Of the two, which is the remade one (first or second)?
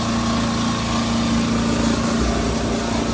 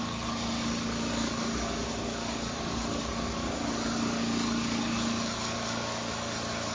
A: second